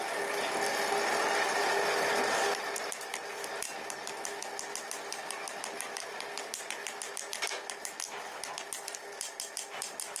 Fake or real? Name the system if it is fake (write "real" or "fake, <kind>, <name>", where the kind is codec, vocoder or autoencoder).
real